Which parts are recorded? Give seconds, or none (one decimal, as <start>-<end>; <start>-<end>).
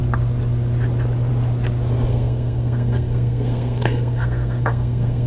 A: 0.0-2.1